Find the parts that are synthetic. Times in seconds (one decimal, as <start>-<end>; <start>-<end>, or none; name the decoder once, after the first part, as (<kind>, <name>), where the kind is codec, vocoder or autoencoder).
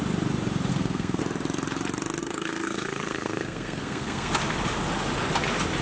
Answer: 0.7-1.2 (codec, SNAC); 2.2-4.3